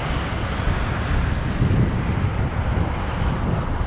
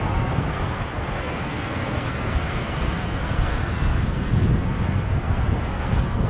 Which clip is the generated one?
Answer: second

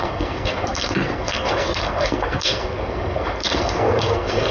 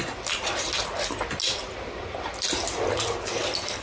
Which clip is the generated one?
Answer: first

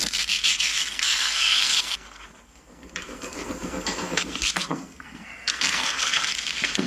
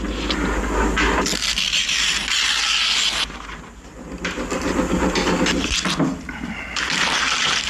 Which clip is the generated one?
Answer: first